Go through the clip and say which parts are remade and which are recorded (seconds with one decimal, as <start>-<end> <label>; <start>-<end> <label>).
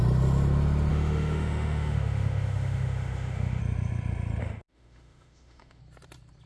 0.0-0.9 recorded; 0.9-3.6 remade; 3.6-4.4 recorded; 4.4-5.8 remade; 5.8-6.5 recorded